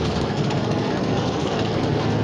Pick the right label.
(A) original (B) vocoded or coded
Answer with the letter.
B